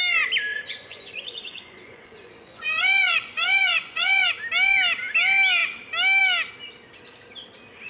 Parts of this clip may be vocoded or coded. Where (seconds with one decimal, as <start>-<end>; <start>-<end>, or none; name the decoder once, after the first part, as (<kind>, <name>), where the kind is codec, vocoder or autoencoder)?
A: 0.5-4.3 (vocoder, Vocos)